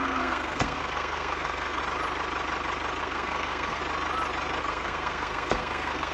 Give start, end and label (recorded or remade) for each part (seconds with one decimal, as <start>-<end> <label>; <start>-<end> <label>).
0.0-1.8 remade; 1.8-3.0 recorded; 3.0-3.8 remade; 3.8-4.6 recorded; 4.6-6.1 remade